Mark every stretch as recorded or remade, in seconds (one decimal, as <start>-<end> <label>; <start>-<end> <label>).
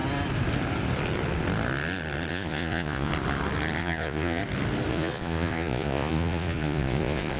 0.0-2.3 recorded; 2.3-3.1 remade; 3.1-3.8 recorded; 3.8-4.4 remade; 4.4-4.9 recorded; 4.9-7.4 remade